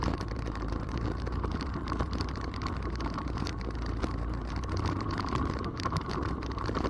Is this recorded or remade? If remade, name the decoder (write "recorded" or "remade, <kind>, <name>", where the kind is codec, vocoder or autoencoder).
remade, vocoder, BigVGAN v2